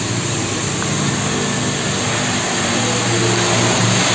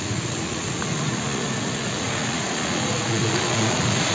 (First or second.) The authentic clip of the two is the first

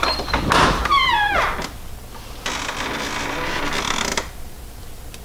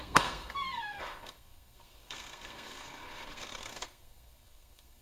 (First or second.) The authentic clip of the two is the first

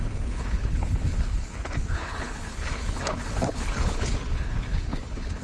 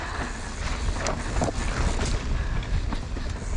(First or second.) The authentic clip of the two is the second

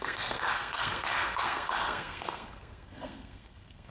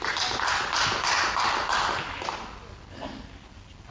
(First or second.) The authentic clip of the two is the second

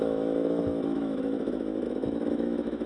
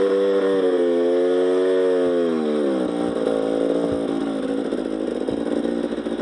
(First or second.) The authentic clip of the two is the second